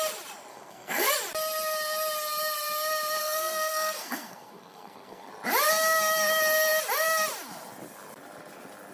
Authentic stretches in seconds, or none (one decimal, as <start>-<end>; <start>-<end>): 0.0-0.5; 1.1-3.2; 5.3-8.9